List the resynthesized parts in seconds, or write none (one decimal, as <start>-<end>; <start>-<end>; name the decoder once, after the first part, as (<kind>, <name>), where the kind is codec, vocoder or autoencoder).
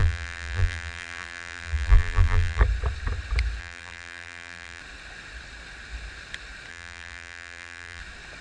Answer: 0.0-2.6 (vocoder, BigVGAN v2); 3.6-4.8; 6.7-8.0